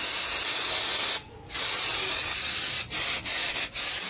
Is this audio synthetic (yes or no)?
no